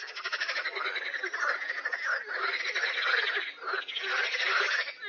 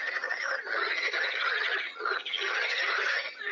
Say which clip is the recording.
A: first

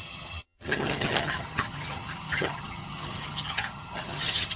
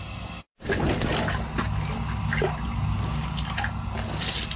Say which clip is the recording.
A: second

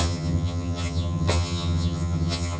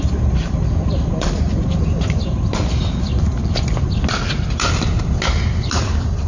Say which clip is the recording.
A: second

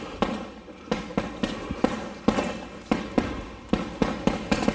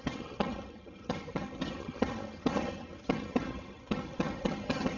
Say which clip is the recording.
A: first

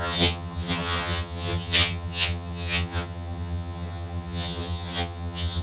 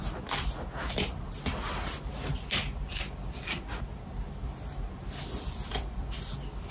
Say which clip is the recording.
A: second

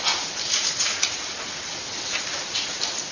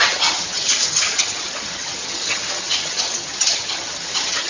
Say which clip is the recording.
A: first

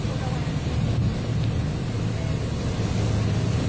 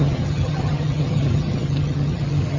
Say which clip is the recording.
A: first